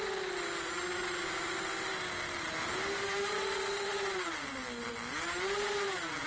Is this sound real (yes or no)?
yes